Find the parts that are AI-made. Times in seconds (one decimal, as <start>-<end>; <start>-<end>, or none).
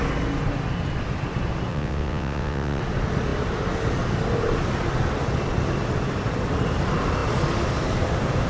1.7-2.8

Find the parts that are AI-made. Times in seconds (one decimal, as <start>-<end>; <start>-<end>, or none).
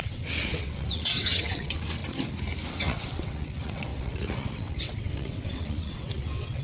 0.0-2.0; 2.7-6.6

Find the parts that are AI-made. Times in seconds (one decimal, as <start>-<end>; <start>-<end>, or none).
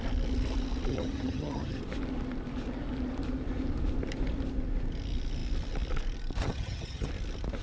0.9-1.8; 6.4-7.1